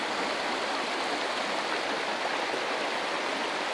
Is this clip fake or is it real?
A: real